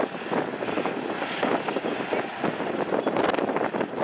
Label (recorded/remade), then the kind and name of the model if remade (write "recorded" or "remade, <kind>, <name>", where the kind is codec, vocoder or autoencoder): recorded